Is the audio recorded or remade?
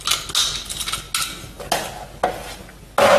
recorded